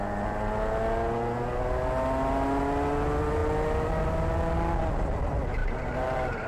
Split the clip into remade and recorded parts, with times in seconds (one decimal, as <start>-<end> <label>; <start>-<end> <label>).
0.0-5.6 recorded; 5.6-6.5 remade